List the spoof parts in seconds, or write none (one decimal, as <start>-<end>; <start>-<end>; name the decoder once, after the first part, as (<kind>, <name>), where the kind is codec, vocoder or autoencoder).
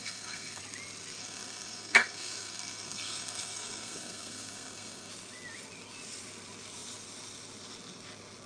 0.0-0.6 (codec, SNAC); 1.2-5.1